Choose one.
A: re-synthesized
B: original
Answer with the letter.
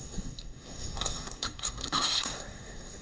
A